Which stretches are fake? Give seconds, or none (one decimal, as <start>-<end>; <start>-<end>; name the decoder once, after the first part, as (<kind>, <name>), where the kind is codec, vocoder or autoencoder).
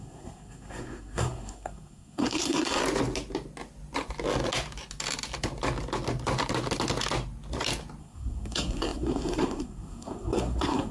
0.0-2.8 (codec, SNAC); 8.0-10.9